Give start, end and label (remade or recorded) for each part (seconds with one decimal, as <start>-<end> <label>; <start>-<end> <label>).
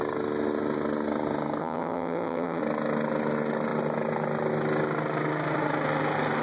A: 0.0-1.6 recorded; 1.6-2.6 remade; 2.6-6.4 recorded